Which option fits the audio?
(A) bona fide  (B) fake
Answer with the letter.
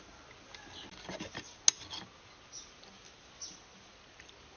A